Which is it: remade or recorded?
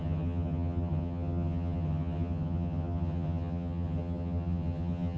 remade